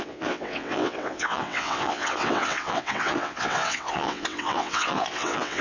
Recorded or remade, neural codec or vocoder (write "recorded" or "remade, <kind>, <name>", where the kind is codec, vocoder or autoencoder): remade, vocoder, WaveNeXt